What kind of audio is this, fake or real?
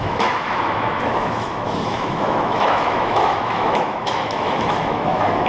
fake